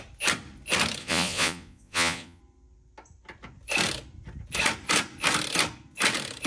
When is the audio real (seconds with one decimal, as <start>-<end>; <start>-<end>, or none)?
0.0-1.0; 2.4-6.5